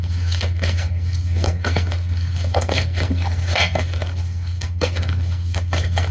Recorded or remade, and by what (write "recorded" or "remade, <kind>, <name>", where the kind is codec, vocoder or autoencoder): remade, codec, SNAC